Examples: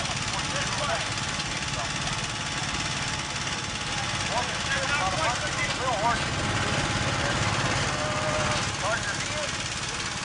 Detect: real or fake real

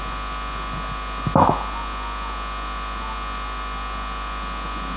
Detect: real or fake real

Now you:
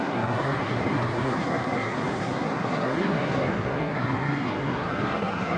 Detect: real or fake fake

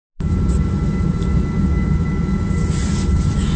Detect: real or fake real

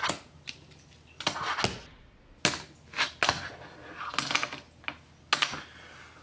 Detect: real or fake real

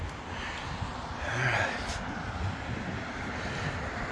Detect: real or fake real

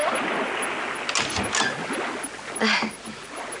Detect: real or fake real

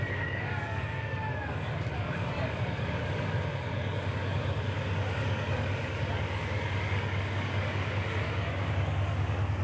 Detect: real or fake fake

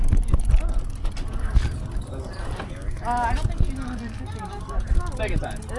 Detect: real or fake real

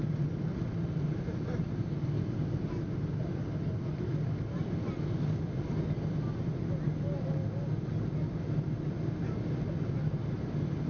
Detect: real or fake real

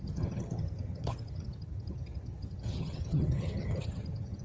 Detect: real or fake fake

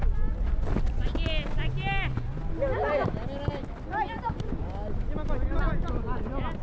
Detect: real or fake real